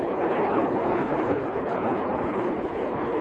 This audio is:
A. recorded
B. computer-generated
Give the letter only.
B